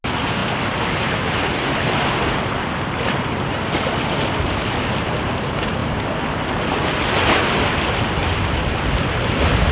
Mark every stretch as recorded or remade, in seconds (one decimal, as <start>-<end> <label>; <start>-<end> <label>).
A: 0.0-0.4 recorded; 0.4-4.8 remade; 4.8-8.2 recorded; 8.2-9.2 remade; 9.2-9.7 recorded